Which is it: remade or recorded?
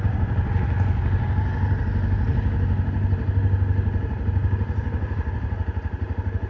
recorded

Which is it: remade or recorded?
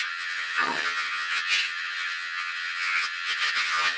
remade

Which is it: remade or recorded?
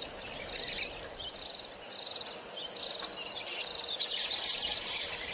recorded